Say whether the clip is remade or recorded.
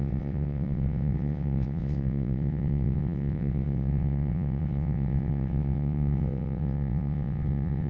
remade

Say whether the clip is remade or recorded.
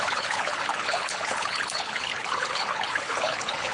remade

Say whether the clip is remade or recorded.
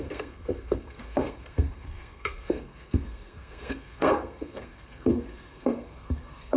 remade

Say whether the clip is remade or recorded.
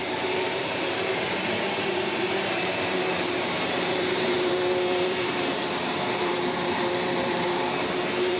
remade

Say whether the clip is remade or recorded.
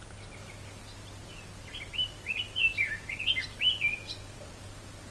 recorded